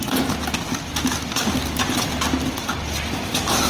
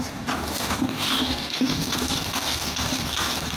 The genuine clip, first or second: first